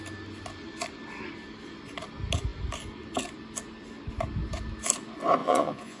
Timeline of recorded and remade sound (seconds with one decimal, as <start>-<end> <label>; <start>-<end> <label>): 0.0-5.4 recorded; 5.4-6.0 remade